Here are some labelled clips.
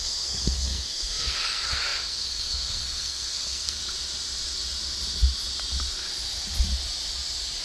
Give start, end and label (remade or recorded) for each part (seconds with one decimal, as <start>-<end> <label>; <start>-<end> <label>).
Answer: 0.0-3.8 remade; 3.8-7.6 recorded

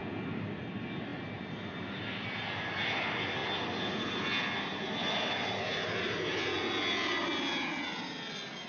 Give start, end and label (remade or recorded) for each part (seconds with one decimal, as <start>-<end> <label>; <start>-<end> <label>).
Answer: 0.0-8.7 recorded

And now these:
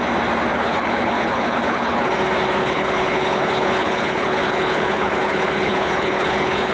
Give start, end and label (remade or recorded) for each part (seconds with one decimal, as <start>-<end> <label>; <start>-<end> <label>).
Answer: 0.0-0.5 recorded; 0.5-2.1 remade; 2.1-2.6 recorded; 2.6-6.7 remade

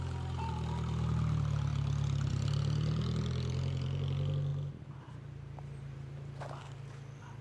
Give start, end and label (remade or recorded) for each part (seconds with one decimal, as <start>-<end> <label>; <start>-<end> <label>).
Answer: 0.0-7.4 recorded